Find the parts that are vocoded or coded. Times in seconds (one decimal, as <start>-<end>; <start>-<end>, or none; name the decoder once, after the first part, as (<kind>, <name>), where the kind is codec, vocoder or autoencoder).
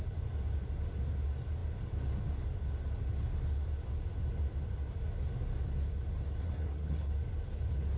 6.4-7.1 (codec, SNAC)